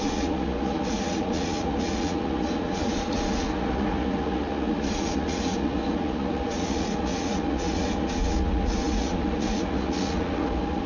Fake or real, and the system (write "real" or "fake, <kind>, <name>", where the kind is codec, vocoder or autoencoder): fake, vocoder, Vocos